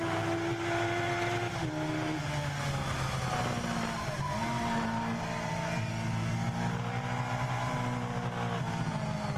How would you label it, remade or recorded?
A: recorded